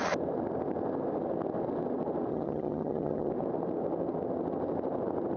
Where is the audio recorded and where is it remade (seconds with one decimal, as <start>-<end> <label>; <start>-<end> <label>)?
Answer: 0.0-2.3 recorded; 2.3-3.3 remade; 3.3-5.4 recorded

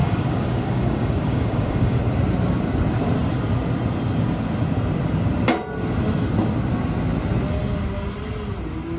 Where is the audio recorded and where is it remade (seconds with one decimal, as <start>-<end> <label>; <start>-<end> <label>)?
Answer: 0.0-2.0 remade; 2.0-9.0 recorded

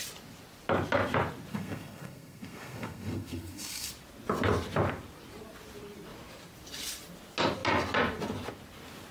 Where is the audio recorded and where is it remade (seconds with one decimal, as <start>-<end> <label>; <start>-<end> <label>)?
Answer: 0.0-1.5 recorded; 1.5-3.9 remade; 3.9-9.1 recorded

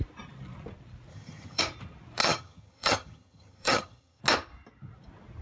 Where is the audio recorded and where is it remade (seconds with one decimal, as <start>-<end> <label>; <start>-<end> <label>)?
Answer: 0.0-1.1 recorded; 1.1-1.6 remade; 1.6-2.2 recorded; 2.2-4.2 remade; 4.2-5.4 recorded

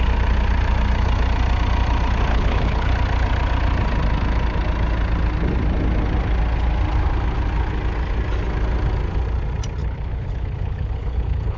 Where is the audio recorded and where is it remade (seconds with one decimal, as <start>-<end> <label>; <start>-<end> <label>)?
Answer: 0.0-2.3 recorded; 2.3-2.9 remade; 2.9-9.8 recorded; 9.8-11.6 remade

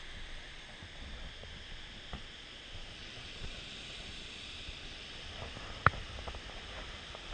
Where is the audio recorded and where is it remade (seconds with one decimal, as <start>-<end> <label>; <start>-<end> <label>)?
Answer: 0.0-3.0 recorded; 3.0-4.0 remade; 4.0-7.3 recorded

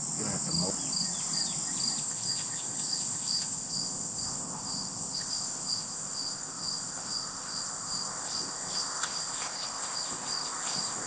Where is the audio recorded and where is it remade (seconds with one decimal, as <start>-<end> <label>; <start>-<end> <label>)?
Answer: 0.0-2.0 recorded; 2.0-11.1 remade